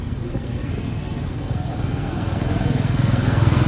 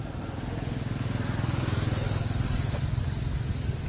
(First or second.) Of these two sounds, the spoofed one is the first